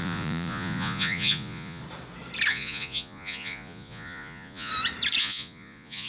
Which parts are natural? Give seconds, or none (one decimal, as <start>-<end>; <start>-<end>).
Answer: 1.8-2.5; 4.7-5.2